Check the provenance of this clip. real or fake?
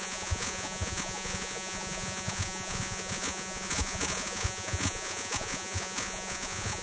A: fake